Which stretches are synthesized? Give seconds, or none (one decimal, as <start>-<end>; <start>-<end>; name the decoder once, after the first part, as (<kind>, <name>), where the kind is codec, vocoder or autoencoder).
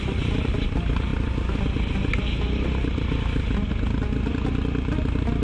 0.0-1.1 (vocoder, BigVGAN v2); 4.3-5.4